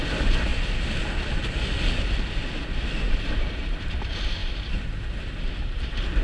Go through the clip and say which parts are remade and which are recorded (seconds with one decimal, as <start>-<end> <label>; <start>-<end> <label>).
0.0-0.5 remade; 0.5-3.1 recorded; 3.1-6.2 remade